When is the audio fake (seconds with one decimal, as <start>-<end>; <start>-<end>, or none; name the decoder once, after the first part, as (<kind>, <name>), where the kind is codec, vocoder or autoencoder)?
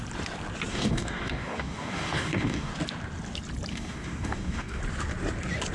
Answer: 0.7-2.7 (codec, DAC); 3.7-4.8